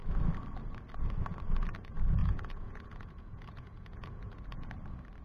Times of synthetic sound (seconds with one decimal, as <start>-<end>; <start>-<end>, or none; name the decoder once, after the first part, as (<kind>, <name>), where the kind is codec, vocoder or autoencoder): 2.2-4.7 (vocoder, Vocos)